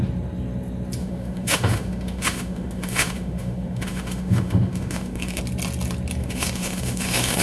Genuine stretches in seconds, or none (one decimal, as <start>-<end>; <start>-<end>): 0.0-1.0; 5.4-6.2